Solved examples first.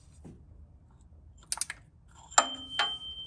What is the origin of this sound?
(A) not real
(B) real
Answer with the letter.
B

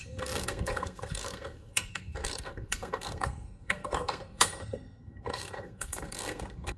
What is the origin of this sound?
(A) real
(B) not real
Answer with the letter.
B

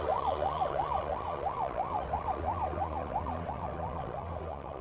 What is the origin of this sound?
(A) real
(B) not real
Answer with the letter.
B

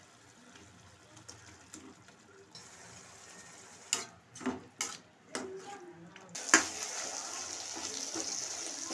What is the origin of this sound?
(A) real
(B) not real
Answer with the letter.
A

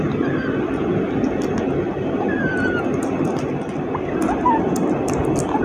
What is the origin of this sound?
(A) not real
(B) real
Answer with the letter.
B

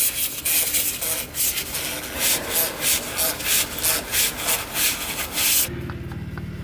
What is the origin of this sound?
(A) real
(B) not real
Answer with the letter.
A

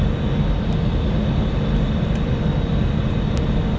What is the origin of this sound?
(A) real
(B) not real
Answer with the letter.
A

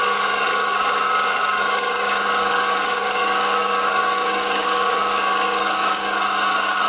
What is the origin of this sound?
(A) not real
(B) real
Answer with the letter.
A